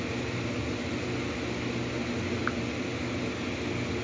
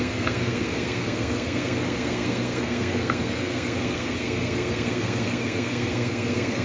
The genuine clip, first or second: first